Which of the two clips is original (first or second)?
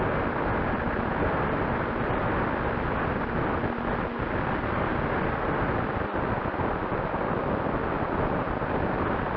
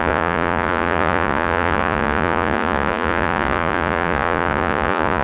first